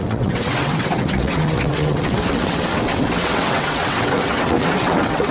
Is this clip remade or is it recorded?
remade